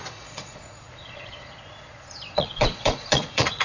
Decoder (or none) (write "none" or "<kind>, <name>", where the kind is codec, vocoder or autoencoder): vocoder, Vocos